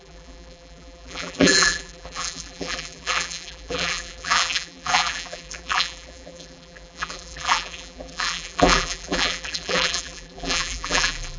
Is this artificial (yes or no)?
yes